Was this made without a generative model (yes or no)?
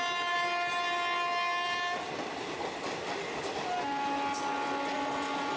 yes